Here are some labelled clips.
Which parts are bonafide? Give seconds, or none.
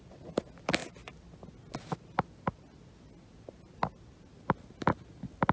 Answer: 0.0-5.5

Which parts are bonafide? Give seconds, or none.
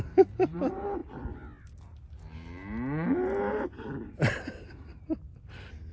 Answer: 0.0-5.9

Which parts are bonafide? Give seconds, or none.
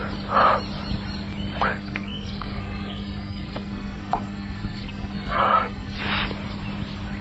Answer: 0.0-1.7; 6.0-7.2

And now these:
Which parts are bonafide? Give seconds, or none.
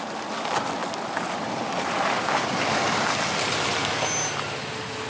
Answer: 0.0-5.1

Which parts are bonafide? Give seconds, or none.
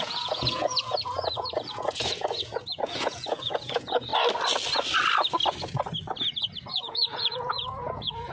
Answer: 4.1-6.7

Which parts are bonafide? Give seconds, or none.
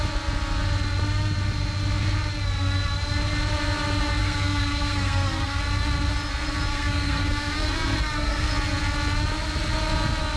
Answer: 0.0-4.2; 5.6-6.7; 8.5-10.4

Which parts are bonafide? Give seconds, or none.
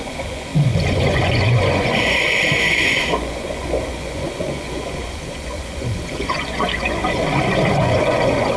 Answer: none